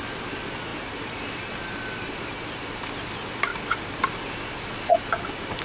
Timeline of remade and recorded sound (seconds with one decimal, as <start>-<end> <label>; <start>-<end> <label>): 0.0-0.7 recorded; 0.7-2.6 remade; 2.6-3.5 recorded; 3.5-4.1 remade; 4.1-5.6 recorded